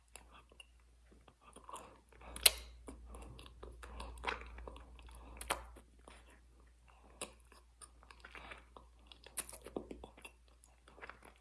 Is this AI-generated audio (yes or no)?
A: no